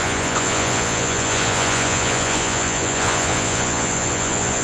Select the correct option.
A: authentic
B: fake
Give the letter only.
B